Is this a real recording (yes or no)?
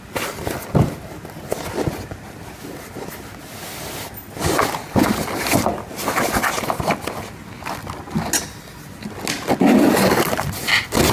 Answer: yes